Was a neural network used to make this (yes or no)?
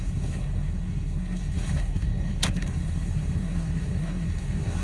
yes